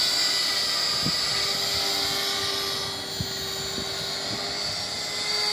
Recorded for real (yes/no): yes